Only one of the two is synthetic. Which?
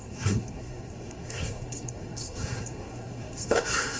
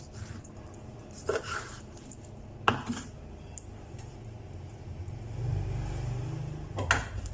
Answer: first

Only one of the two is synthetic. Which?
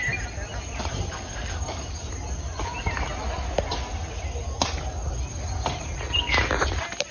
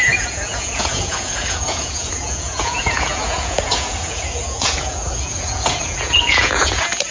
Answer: second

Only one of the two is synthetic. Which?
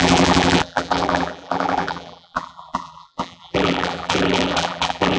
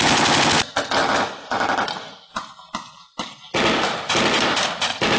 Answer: first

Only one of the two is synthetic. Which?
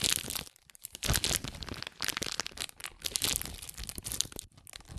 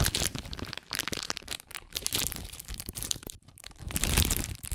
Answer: second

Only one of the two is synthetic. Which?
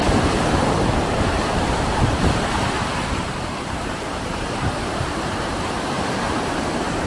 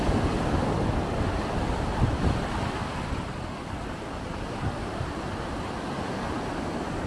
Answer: first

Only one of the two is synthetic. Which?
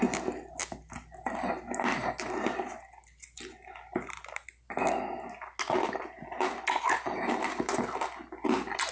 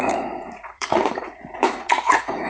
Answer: second